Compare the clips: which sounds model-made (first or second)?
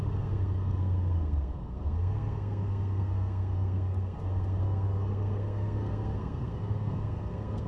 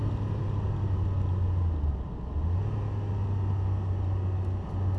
first